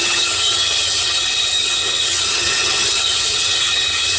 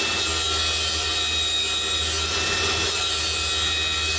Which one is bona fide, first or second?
second